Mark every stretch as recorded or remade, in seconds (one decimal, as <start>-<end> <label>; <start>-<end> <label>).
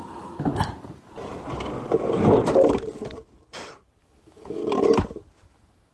0.0-0.5 remade; 0.5-4.0 recorded; 4.0-4.6 remade; 4.6-5.4 recorded; 5.4-5.9 remade